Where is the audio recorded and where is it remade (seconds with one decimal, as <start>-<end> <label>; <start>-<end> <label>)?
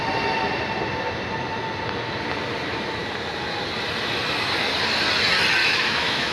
0.0-5.6 recorded; 5.6-6.3 remade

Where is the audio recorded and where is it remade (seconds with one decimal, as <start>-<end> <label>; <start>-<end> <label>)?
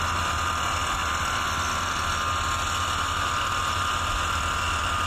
0.0-5.1 recorded